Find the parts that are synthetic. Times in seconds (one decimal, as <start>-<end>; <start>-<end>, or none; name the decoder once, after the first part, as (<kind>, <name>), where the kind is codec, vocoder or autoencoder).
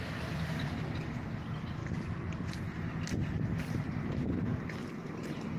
0.0-1.8 (vocoder, BigVGAN v2); 4.9-5.6